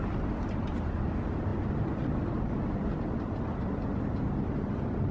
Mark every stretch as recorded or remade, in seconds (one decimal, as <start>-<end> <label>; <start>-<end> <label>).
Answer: 0.0-5.1 recorded